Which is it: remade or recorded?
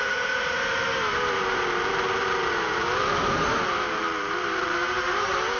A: remade